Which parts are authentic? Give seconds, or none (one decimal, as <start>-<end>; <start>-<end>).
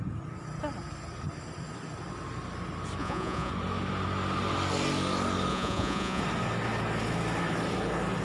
0.0-3.0; 3.5-5.5; 6.2-8.2